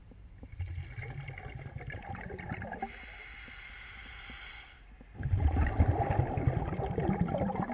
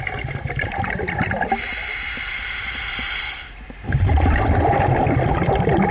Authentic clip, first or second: first